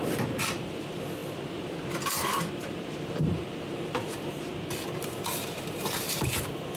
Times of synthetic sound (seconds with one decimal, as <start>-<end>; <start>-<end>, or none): 0.0-4.5; 5.0-6.8